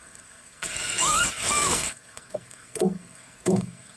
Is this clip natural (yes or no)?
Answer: no